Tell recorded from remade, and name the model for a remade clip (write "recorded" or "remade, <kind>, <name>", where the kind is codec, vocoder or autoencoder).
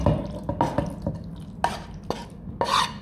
recorded